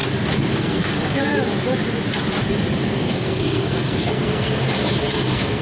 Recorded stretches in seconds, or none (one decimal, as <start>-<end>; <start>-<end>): 0.0-0.6; 1.3-2.8